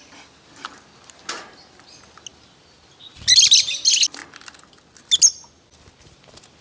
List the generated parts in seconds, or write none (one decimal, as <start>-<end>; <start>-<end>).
none